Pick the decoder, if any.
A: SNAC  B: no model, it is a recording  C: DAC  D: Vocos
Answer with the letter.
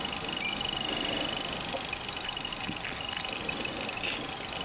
B